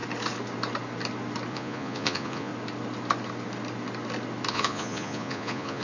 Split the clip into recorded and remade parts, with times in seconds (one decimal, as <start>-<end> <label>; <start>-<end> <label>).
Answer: 0.0-1.5 recorded; 1.5-2.5 remade; 2.5-4.5 recorded; 4.5-5.8 remade